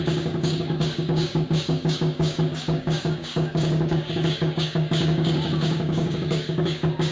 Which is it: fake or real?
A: fake